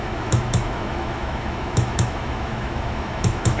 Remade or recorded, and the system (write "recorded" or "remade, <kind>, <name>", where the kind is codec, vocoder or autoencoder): remade, autoencoder, DAC-VAE